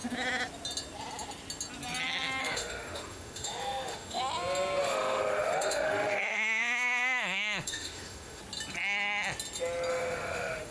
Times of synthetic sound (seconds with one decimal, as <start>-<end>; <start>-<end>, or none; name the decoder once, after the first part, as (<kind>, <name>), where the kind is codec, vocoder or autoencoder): 2.4-4.2 (autoencoder, DAC-VAE); 4.8-8.4; 9.9-10.7